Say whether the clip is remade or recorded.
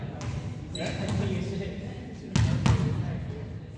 recorded